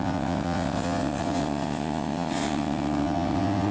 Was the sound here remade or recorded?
remade